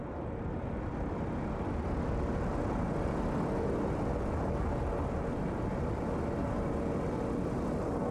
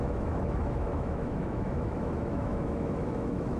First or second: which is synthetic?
second